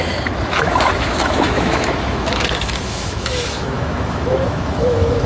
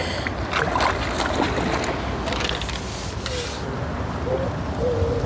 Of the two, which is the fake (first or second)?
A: first